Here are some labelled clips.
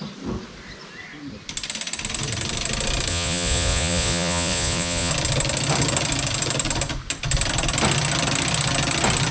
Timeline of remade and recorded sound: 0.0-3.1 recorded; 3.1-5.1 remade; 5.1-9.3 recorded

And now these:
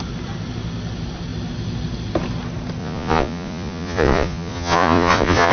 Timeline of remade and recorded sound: 0.0-2.8 recorded; 2.8-5.5 remade

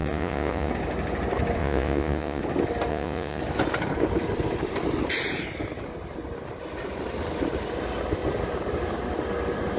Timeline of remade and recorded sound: 0.0-0.7 remade; 0.7-1.6 recorded; 1.6-2.4 remade; 2.4-2.9 recorded; 2.9-3.4 remade; 3.4-9.8 recorded

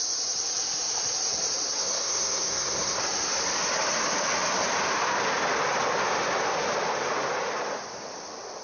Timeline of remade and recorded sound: 0.0-1.8 recorded; 1.8-3.0 remade; 3.0-8.6 recorded